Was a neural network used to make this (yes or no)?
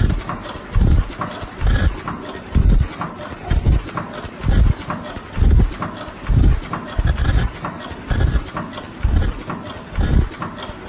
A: no